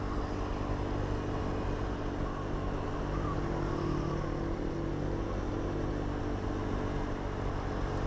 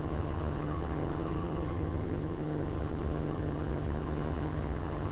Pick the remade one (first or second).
second